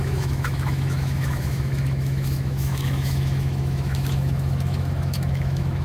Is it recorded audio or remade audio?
remade